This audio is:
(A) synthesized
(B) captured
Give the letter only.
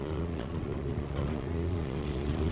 A